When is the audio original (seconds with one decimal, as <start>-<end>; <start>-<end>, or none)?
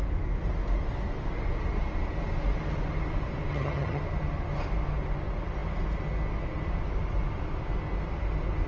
0.0-3.5; 4.0-8.7